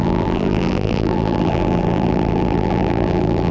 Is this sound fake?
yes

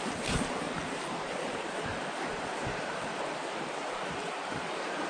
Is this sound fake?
yes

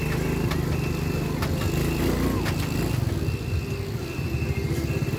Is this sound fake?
no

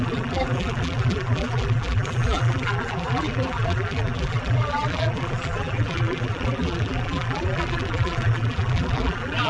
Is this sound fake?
yes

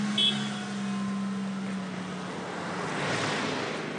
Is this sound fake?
no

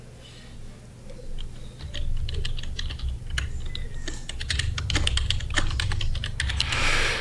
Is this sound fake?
no